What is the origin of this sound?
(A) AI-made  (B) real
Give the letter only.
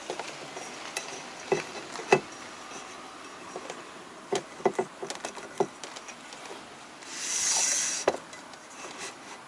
B